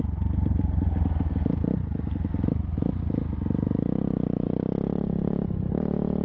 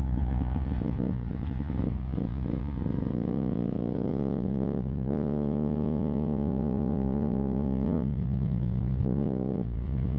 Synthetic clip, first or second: second